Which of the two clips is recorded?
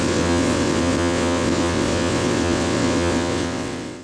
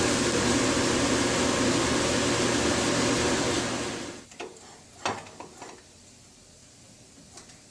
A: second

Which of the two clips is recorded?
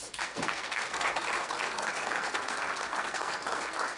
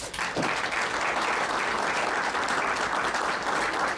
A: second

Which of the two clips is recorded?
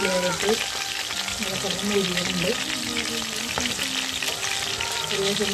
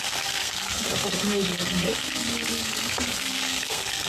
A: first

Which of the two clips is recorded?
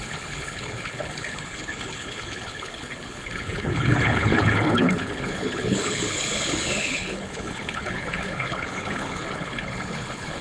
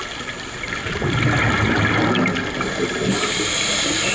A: second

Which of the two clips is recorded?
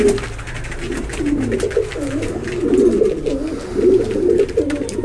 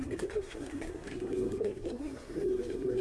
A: first